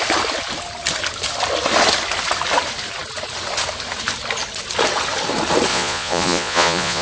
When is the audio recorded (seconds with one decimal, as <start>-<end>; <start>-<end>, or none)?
0.0-5.7